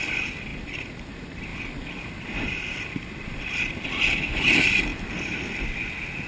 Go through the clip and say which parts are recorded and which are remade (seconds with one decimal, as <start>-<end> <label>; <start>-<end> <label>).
0.0-6.3 recorded